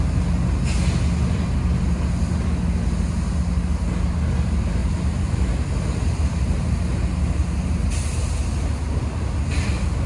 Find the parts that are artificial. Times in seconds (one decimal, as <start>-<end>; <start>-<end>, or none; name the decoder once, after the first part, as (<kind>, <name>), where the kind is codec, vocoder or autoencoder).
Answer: 4.8-6.9 (vocoder, BigVGAN v2); 7.4-8.1